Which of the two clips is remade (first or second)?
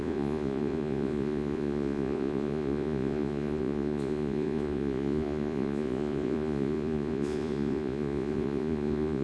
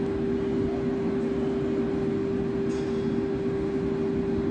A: first